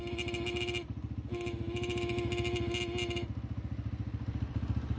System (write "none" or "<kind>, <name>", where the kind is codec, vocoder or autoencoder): none